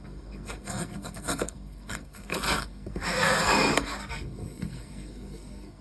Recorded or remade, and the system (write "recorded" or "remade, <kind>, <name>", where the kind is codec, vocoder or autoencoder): remade, codec, SNAC